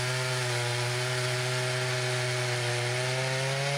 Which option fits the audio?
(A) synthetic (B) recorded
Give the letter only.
B